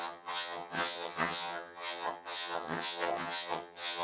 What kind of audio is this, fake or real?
fake